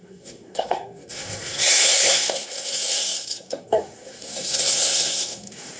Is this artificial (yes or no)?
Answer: yes